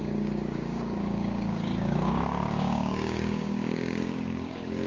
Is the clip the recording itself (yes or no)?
no